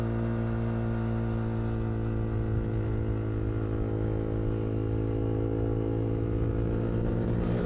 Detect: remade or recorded recorded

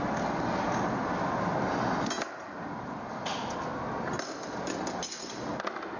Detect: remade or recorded recorded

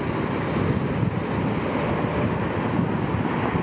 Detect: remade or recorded recorded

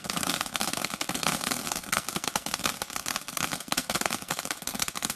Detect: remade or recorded remade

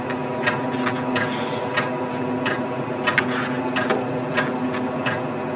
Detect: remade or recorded recorded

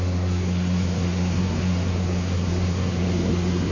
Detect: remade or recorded remade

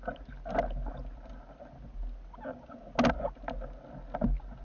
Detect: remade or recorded recorded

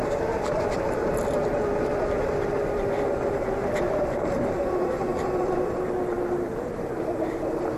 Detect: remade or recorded recorded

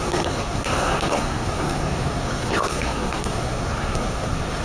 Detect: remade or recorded remade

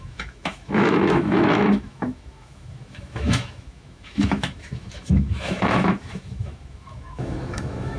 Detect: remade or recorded remade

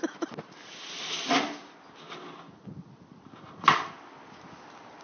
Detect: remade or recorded recorded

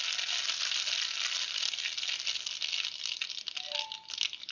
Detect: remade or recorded recorded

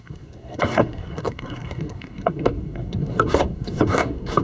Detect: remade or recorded remade